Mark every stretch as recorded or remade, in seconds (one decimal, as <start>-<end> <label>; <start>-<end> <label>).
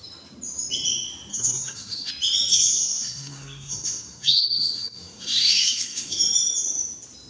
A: 0.0-1.3 recorded; 1.3-2.1 remade; 2.1-2.5 recorded; 2.5-6.2 remade; 6.2-7.3 recorded